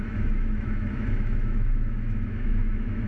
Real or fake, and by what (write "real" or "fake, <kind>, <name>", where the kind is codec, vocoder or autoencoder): fake, autoencoder, DAC-VAE